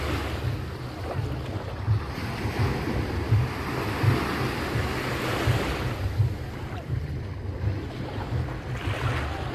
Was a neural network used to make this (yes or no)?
no